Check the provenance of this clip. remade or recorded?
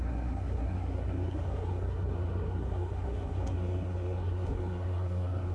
remade